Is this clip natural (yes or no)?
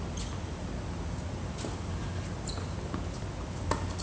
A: yes